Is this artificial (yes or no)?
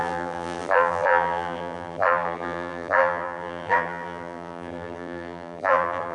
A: yes